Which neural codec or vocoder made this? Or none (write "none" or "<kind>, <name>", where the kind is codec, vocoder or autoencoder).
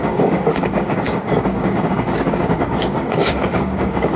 codec, DAC